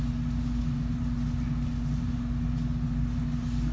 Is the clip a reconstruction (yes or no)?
no